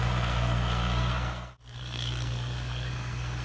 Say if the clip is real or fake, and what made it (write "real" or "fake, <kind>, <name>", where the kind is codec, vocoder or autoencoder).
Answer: fake, codec, SNAC